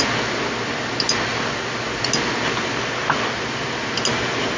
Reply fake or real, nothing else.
real